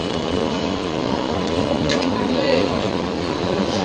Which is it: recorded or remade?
remade